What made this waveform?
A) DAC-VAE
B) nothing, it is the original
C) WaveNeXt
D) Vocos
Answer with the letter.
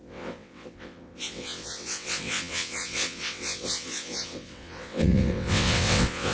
C